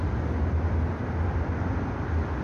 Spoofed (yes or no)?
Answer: no